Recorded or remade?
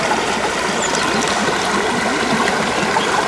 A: recorded